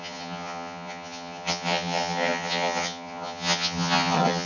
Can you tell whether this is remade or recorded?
remade